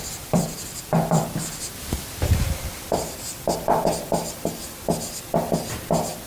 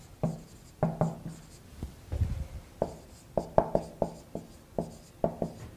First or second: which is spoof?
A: first